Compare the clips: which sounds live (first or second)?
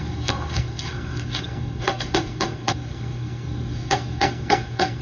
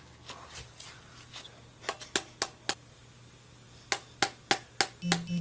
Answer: second